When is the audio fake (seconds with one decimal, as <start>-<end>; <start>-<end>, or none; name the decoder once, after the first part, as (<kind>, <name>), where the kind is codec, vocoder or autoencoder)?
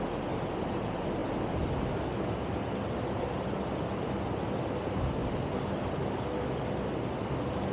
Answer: 1.2-2.0 (vocoder, BigVGAN v2); 5.2-5.8